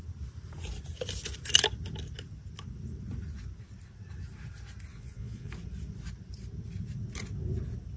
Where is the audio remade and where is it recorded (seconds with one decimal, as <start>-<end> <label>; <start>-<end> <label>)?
0.0-4.9 recorded; 4.9-5.5 remade; 5.5-8.0 recorded